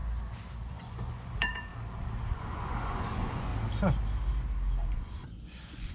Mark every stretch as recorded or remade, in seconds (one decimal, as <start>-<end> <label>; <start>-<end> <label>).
0.0-0.7 recorded; 0.7-1.7 remade; 1.7-2.3 recorded; 2.3-3.5 remade; 3.5-4.9 recorded; 4.9-5.9 remade